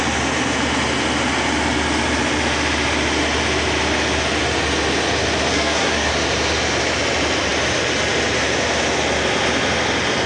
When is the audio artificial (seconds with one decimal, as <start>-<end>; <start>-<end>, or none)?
5.5-6.1